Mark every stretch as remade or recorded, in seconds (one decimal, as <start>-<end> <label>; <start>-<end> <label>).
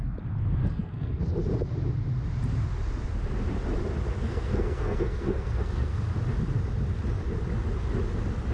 0.0-0.6 recorded; 0.6-1.2 remade; 1.2-4.2 recorded; 4.2-6.1 remade; 6.1-8.5 recorded